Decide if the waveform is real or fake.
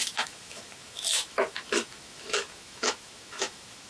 fake